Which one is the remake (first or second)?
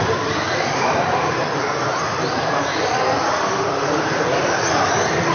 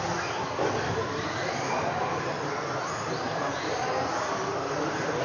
first